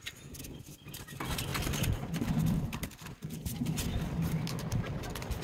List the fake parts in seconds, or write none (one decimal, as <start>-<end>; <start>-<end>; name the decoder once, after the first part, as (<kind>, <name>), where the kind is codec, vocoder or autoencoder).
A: none

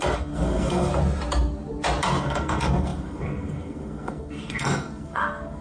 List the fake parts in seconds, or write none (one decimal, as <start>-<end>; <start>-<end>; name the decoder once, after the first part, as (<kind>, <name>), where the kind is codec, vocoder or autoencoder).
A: 0.0-0.9 (codec, SNAC); 2.2-5.6

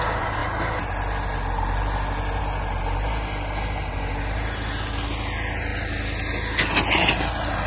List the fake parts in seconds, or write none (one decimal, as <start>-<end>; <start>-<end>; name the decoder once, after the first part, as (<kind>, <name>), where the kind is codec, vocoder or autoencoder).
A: none

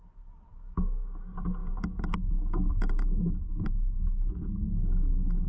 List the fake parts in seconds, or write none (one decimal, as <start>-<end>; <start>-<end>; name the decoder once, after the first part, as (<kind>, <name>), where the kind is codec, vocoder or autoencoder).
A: 1.6-4.9 (codec, DAC)